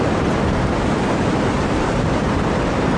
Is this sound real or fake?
fake